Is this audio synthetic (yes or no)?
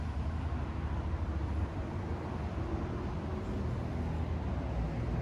no